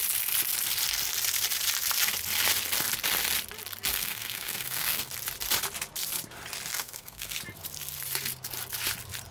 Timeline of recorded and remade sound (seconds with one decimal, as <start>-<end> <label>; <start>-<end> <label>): 0.0-3.9 recorded; 3.9-5.1 remade; 5.1-6.7 recorded; 6.7-7.4 remade; 7.4-9.3 recorded